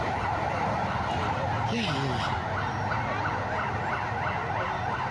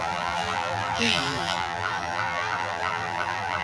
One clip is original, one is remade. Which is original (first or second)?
first